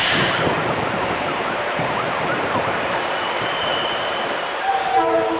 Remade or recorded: remade